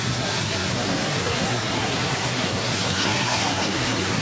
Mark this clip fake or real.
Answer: fake